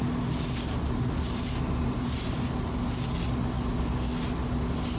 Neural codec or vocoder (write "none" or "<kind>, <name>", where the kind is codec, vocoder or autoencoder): none